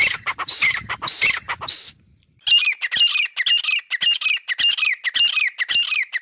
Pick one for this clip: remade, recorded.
recorded